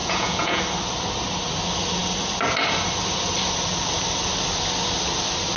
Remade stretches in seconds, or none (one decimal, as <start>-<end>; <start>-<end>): 0.0-0.6